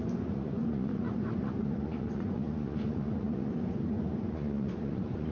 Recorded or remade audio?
remade